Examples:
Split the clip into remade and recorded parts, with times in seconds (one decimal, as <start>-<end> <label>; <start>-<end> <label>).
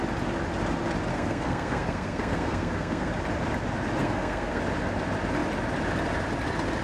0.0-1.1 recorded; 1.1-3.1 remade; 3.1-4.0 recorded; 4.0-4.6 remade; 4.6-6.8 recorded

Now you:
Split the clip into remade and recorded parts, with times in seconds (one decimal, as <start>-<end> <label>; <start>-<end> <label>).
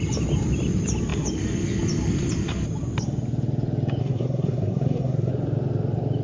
0.0-4.0 recorded; 4.0-5.3 remade; 5.3-6.2 recorded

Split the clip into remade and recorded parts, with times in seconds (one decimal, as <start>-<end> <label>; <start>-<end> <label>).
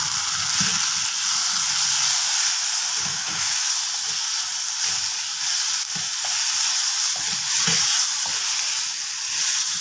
0.0-3.1 recorded; 3.1-3.7 remade; 3.7-9.8 recorded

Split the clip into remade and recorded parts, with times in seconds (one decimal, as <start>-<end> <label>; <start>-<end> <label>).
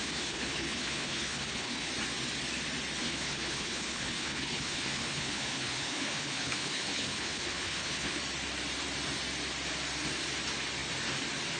0.0-1.9 remade; 1.9-3.0 recorded; 3.0-8.2 remade; 8.2-11.6 recorded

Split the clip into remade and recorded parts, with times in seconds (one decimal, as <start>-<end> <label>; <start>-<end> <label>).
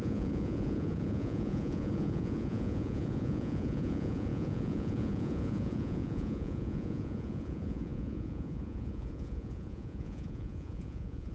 0.0-11.3 remade